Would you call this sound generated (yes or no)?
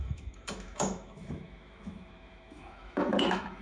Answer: yes